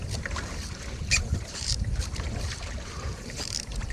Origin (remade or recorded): remade